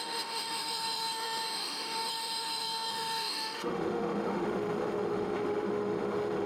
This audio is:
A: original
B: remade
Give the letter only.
B